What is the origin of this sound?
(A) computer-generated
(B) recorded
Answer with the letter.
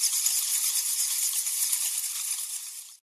B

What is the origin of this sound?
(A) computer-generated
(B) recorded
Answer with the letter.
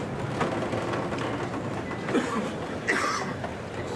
B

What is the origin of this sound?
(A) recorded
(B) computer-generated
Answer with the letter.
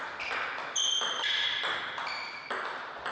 A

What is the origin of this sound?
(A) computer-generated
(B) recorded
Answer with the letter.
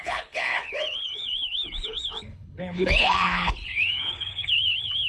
A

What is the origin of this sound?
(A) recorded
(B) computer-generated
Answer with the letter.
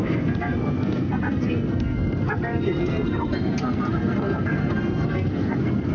B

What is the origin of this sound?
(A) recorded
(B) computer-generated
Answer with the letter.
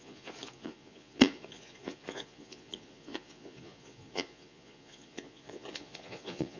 B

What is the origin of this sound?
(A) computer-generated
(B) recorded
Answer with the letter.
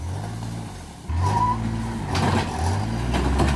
B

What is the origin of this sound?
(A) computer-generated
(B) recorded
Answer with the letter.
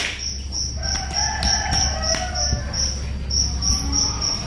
B